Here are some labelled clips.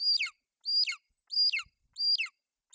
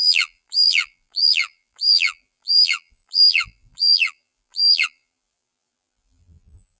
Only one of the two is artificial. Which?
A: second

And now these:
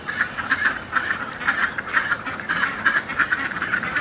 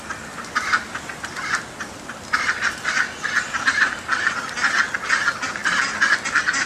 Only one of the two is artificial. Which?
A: first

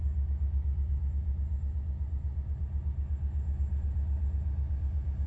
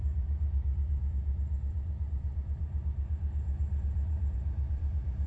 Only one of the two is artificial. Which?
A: second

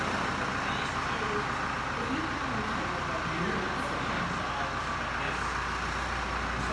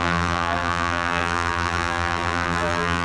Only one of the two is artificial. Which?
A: second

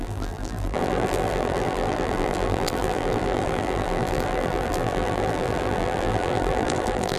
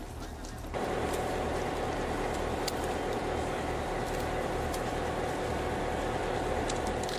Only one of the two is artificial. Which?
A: first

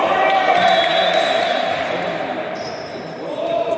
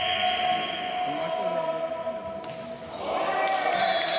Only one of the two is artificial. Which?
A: first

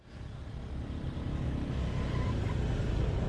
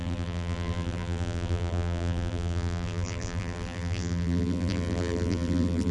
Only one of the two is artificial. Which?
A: second